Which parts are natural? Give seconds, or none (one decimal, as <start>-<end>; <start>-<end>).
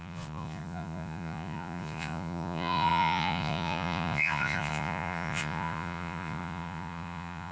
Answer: none